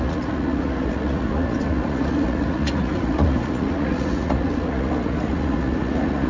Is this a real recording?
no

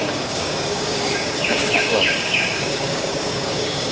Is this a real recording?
no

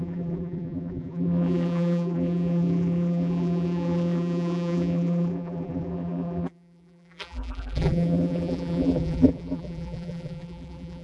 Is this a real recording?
no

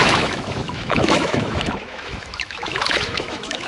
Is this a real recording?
no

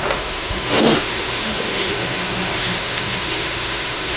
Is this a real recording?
no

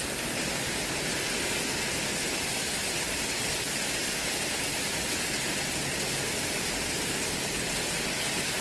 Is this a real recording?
yes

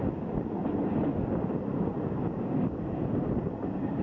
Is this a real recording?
yes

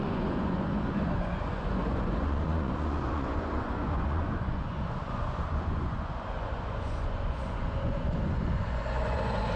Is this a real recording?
no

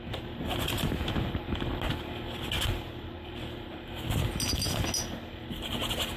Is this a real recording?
yes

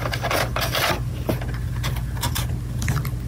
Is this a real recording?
yes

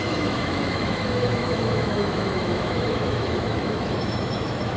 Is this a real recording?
no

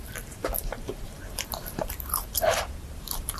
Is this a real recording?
no